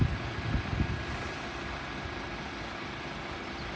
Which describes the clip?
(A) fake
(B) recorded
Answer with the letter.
B